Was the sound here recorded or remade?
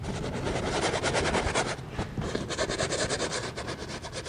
recorded